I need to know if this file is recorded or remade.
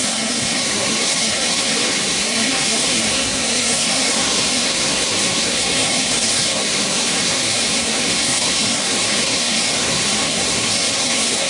remade